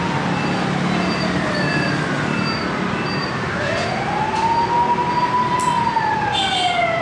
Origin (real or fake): real